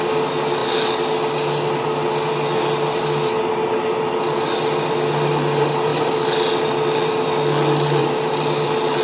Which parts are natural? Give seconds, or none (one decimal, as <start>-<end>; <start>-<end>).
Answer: 0.0-9.0